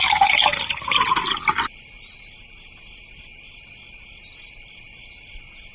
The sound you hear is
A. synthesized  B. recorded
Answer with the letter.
B